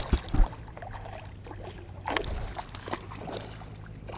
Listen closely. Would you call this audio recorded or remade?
recorded